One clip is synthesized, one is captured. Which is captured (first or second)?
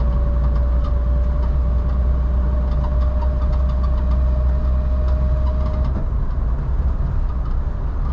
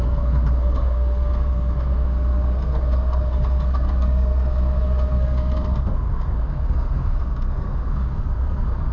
first